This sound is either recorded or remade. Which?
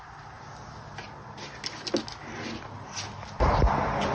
recorded